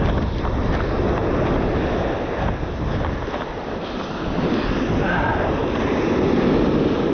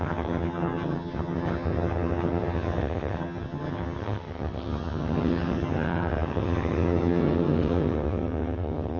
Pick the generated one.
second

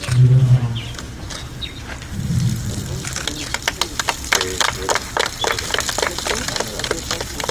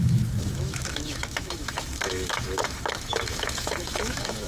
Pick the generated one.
second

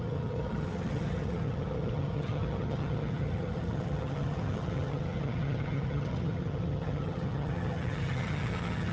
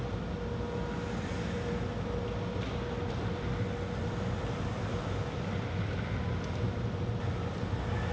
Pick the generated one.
first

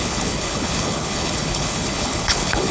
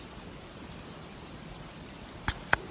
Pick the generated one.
first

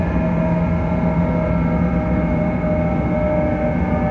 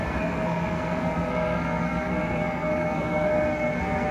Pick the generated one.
second